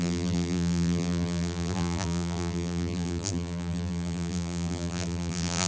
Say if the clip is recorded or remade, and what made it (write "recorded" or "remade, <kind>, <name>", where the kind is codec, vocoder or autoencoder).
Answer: remade, vocoder, BigVGAN v2